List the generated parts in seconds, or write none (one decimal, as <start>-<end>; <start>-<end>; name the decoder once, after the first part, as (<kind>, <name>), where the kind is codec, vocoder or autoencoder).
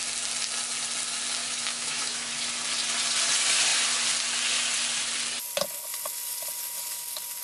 1.4-2.3 (autoencoder, DAC-VAE)